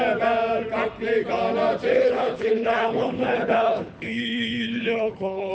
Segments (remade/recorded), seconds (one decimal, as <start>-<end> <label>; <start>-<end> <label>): 0.0-1.9 recorded; 1.9-5.5 remade